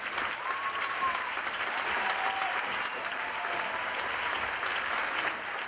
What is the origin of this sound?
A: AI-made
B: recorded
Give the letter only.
A